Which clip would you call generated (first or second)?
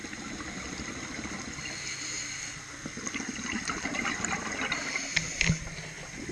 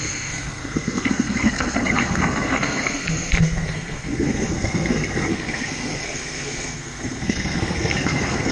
second